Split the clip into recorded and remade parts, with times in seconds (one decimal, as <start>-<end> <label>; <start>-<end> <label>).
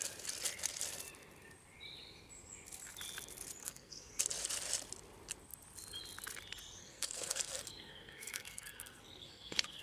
0.0-3.6 recorded; 3.6-4.2 remade; 4.2-6.8 recorded; 6.8-9.8 remade